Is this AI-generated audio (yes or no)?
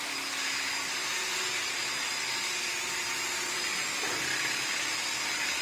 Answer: no